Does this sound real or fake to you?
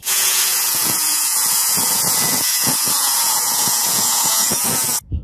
fake